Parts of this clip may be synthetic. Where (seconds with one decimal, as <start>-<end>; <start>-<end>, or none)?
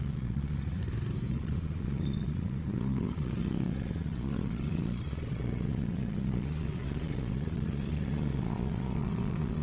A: 0.0-0.8; 1.3-9.6